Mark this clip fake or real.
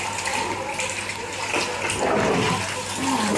real